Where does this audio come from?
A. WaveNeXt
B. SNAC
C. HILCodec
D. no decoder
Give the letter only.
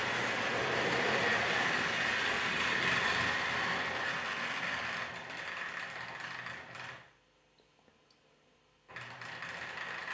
D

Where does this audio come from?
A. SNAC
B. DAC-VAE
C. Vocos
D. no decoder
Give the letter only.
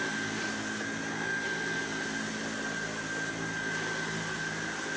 D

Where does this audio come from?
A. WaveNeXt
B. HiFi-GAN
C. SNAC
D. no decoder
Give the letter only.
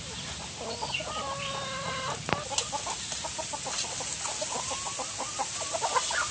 D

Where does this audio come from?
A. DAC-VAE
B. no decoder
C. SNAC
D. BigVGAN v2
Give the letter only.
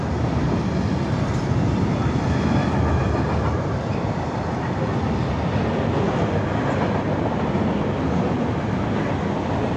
B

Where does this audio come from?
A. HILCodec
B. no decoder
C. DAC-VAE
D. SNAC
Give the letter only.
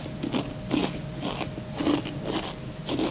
B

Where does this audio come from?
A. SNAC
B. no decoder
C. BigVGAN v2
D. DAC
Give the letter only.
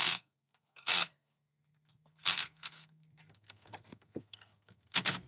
A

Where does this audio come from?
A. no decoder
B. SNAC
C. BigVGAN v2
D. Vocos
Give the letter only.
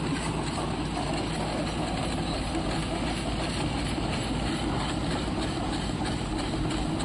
A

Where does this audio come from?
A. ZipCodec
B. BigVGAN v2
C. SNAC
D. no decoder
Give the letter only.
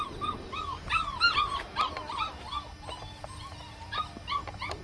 D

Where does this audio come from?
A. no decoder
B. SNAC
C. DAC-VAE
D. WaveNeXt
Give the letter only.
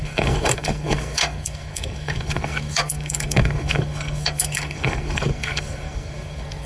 B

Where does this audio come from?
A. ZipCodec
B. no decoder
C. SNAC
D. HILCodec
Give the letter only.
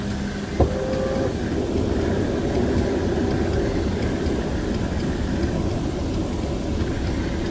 B